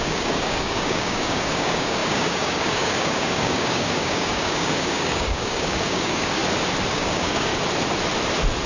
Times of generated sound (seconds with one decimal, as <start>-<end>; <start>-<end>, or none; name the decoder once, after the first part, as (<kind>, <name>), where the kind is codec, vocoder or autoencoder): 0.0-6.4 (codec, DAC); 6.9-7.5